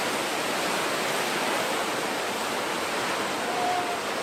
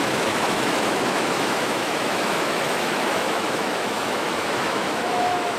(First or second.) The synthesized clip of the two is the second